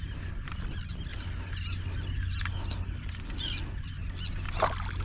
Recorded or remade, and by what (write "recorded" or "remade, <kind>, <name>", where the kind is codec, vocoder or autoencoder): recorded